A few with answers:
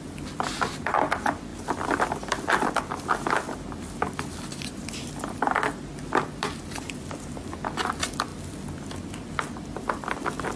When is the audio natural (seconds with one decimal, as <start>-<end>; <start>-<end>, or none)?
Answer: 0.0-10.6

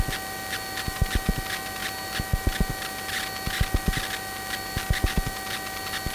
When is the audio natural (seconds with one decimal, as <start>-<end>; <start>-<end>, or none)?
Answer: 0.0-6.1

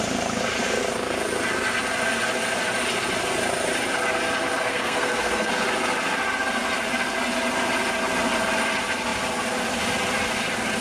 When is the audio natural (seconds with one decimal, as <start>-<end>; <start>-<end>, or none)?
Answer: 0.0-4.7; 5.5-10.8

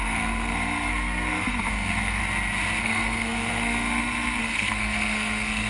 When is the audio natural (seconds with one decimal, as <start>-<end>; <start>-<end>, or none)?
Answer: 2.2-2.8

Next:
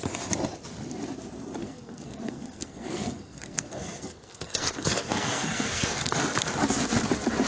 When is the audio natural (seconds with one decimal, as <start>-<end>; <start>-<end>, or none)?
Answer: 0.0-1.6; 6.1-7.5

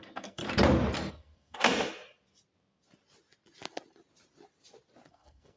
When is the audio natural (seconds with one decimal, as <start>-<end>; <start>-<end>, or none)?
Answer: 0.4-1.1; 1.7-5.1